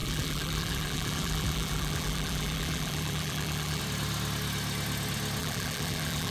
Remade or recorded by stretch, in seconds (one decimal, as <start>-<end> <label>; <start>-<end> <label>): 0.0-3.8 remade; 3.8-5.4 recorded; 5.4-6.3 remade